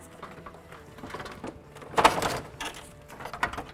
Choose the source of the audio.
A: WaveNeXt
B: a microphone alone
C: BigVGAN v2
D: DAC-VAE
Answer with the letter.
B